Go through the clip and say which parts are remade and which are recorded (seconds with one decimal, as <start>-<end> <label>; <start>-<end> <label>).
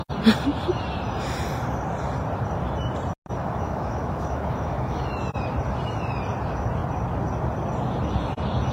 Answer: 0.0-3.4 recorded; 3.4-5.0 remade; 5.0-8.7 recorded